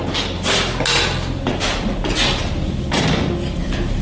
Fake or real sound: real